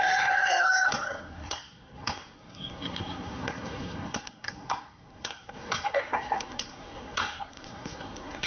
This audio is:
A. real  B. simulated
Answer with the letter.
B